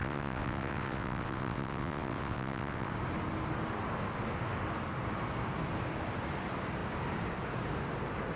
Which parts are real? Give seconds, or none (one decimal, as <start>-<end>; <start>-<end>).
2.9-8.4